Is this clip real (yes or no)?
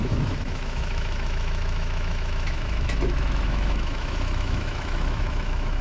no